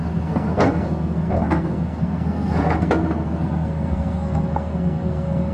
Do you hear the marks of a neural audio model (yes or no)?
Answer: yes